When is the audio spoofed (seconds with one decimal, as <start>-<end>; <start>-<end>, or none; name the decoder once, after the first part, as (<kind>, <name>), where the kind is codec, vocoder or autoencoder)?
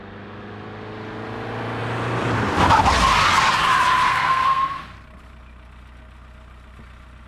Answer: 4.1-4.8 (codec, SNAC)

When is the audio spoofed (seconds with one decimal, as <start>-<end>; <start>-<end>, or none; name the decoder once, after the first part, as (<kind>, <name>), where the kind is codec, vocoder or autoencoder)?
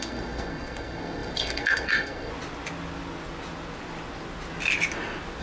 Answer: 0.0-2.3 (codec, SNAC)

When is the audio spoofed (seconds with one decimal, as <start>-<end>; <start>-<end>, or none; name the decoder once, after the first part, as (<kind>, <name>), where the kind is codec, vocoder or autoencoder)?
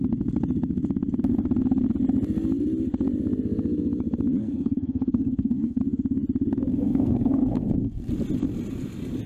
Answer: 4.4-5.8 (codec, SNAC); 6.7-8.1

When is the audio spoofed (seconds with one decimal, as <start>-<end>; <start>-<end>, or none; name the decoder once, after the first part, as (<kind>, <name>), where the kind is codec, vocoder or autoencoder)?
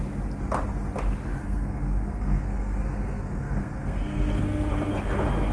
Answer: 1.4-4.7 (codec, SNAC)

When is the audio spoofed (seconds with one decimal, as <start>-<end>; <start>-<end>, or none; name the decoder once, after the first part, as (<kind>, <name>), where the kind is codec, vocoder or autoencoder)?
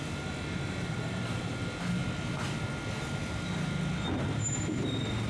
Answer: none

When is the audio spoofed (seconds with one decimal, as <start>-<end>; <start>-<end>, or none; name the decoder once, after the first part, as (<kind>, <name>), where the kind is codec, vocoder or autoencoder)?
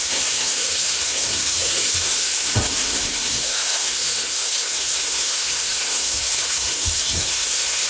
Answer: 0.0-7.9 (codec, SNAC)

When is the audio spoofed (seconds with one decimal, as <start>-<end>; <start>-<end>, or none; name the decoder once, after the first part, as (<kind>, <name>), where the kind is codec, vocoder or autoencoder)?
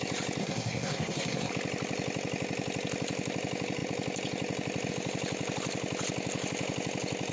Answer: 0.4-1.5 (codec, SNAC)